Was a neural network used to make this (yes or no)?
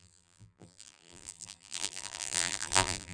yes